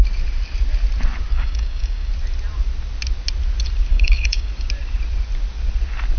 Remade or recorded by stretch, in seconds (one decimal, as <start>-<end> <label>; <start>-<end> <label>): 0.0-1.3 recorded; 1.3-2.1 remade; 2.1-3.9 recorded; 3.9-4.5 remade; 4.5-6.2 recorded